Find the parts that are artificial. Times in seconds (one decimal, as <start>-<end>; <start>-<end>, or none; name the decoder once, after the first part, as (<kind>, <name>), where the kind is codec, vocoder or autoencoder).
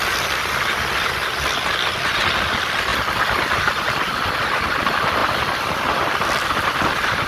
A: 2.9-3.9 (vocoder, BigVGAN v2); 5.2-6.1